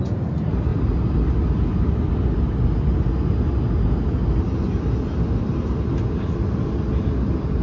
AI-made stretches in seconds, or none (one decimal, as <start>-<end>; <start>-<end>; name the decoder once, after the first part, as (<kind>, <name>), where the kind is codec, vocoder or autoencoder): none